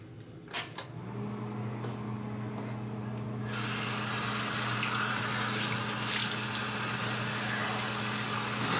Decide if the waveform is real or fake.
real